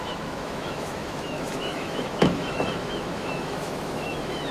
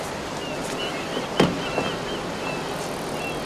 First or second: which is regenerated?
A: first